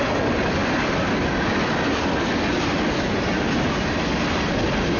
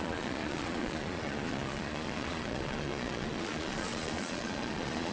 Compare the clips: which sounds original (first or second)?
first